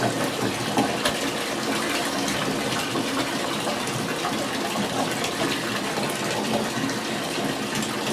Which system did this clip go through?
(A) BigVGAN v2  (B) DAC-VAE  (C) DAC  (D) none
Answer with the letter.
D